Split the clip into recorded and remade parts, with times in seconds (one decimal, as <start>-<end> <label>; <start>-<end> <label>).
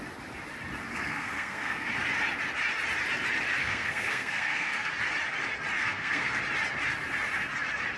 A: 0.0-0.9 recorded; 0.9-1.9 remade; 1.9-3.6 recorded; 3.6-4.9 remade; 4.9-5.8 recorded; 5.8-6.4 remade; 6.4-8.0 recorded